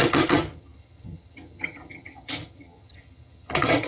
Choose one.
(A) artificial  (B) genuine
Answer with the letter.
A